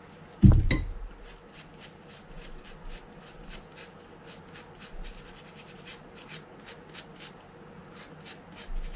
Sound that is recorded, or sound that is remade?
recorded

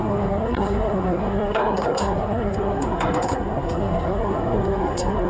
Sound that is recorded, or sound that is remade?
remade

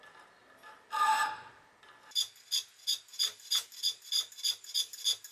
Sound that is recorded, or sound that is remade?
recorded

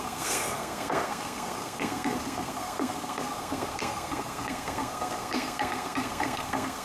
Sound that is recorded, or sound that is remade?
remade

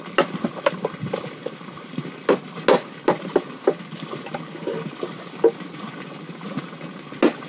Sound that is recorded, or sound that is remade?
recorded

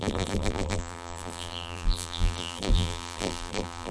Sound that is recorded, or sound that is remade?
remade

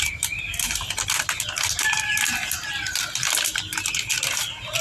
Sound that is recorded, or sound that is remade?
recorded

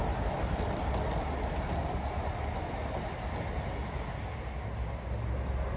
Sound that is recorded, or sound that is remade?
recorded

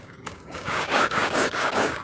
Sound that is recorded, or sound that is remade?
remade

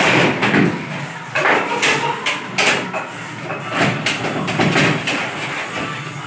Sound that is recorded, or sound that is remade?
recorded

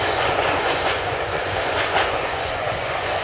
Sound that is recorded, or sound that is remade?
remade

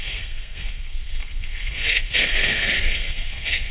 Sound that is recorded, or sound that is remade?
remade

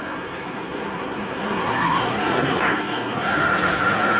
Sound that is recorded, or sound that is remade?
remade